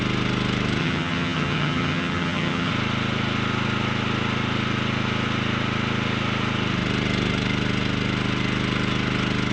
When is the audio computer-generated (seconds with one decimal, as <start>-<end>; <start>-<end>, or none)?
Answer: 0.8-2.7